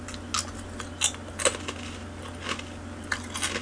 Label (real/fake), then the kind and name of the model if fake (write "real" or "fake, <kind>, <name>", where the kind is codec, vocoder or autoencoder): real